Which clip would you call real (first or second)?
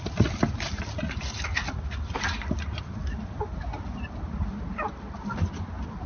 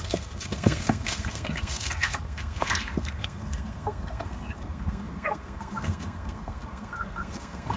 first